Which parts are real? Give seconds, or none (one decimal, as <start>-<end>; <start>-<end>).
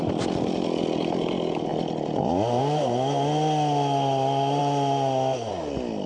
0.0-6.1